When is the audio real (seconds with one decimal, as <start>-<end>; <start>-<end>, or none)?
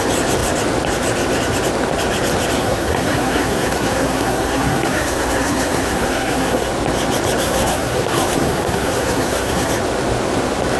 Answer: 0.0-2.6; 6.7-7.4; 9.7-10.8